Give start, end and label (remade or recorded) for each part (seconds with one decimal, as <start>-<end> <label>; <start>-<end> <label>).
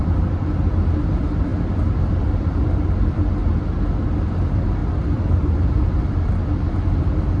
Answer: 0.0-3.4 remade; 3.4-4.0 recorded; 4.0-4.8 remade; 4.8-6.1 recorded; 6.1-7.4 remade